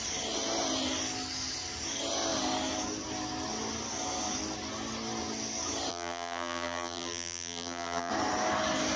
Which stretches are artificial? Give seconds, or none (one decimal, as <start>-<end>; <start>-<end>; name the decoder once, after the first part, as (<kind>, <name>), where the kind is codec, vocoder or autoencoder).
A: 5.9-8.1 (vocoder, BigVGAN v2)